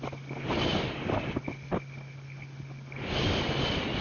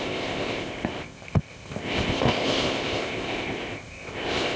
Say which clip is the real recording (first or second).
first